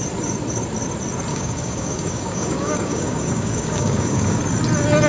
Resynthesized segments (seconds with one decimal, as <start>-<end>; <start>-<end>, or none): 1.3-4.4